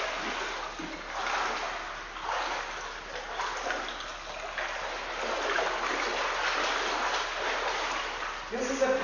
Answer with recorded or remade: recorded